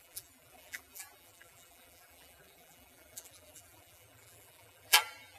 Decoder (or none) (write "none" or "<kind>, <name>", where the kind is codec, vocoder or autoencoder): vocoder, BigVGAN v2